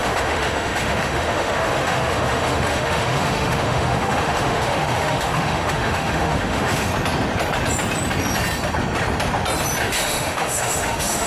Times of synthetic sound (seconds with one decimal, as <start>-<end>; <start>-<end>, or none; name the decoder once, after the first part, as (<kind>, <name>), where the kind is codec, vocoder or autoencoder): 0.0-6.9 (autoencoder, DAC-VAE); 9.8-11.3